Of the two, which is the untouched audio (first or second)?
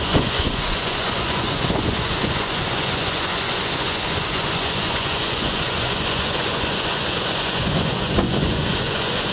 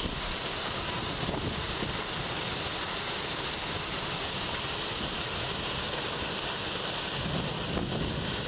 second